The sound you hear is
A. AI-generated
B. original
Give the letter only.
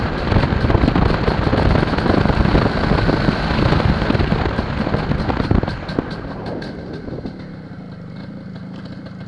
B